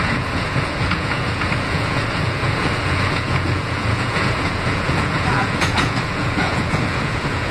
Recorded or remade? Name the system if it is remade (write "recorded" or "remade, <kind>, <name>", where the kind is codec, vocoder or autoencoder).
remade, vocoder, Vocos